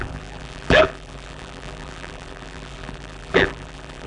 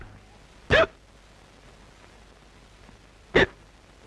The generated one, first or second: first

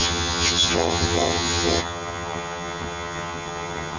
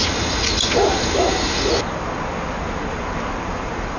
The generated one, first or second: first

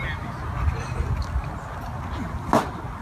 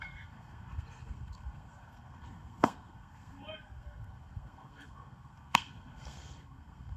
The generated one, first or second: second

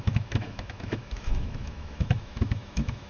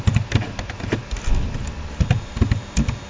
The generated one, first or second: first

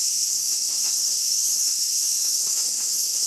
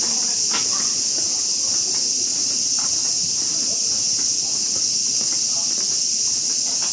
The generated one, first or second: first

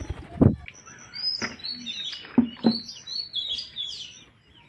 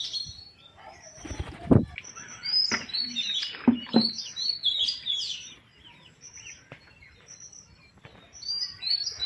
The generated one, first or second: second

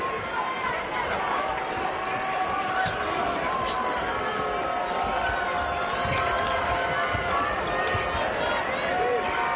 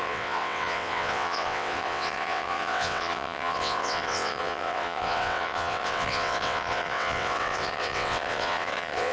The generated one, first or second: second